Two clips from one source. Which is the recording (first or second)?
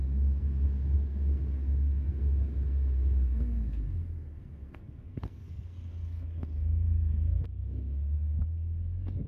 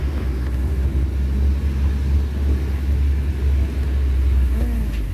second